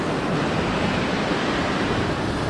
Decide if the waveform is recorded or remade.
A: recorded